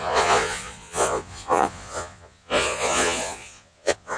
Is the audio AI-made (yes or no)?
yes